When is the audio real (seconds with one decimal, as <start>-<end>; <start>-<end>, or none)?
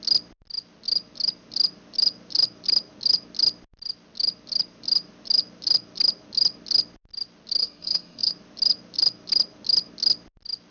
0.0-7.6; 8.3-10.7